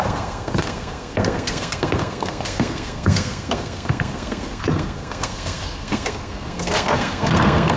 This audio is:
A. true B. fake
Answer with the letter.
B